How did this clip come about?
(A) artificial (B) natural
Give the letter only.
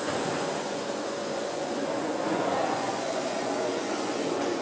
A